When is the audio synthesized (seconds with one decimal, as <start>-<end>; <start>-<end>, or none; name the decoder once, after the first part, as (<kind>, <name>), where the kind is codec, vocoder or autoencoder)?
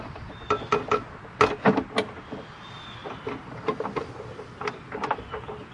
3.0-3.6 (vocoder, BigVGAN v2)